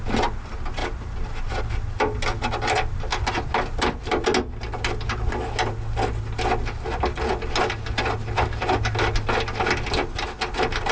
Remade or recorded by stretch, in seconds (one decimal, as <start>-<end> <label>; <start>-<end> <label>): 0.0-10.9 recorded